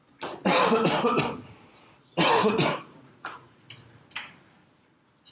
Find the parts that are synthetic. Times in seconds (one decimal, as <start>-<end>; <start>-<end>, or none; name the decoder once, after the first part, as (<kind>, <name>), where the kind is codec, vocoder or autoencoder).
1.7-3.7 (vocoder, Vocos)